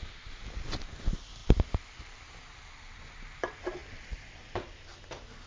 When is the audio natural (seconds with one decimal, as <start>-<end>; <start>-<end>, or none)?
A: 0.0-5.5

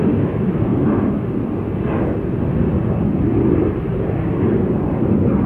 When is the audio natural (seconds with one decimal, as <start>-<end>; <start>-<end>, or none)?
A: 0.0-5.5

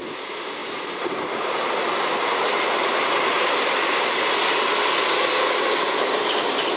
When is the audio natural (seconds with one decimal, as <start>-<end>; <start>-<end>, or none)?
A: 0.0-6.8

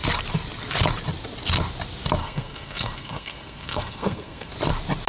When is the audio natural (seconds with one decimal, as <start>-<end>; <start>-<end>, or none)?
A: 0.0-2.2; 4.5-5.1

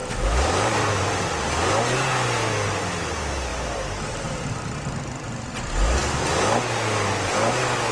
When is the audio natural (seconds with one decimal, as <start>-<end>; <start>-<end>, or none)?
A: 1.3-3.5; 5.4-7.9

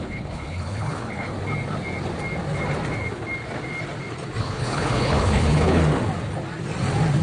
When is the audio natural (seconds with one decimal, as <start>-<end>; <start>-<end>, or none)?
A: 1.3-4.4; 5.8-7.2